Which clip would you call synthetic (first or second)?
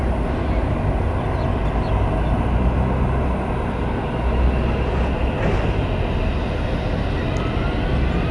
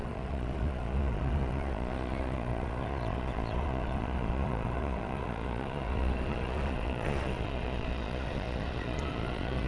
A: second